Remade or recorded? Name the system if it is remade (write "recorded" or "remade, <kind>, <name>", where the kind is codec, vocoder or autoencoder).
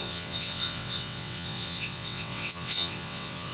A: remade, vocoder, WaveNeXt